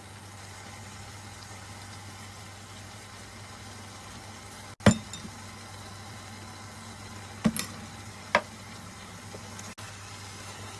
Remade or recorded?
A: recorded